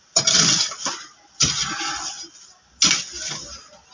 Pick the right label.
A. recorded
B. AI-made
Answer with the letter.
A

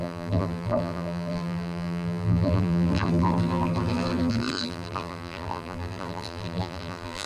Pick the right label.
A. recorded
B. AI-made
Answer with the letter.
B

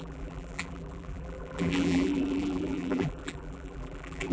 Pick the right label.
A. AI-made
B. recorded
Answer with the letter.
A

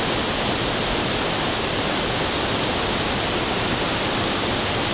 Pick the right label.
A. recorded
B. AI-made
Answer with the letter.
A